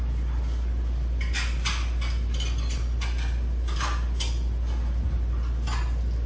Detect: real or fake real